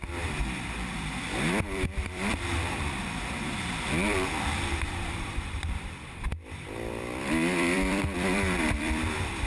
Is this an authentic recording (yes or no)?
no